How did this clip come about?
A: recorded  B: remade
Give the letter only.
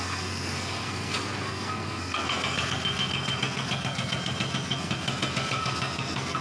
B